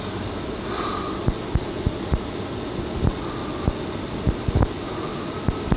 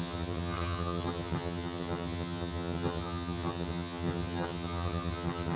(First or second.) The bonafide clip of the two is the first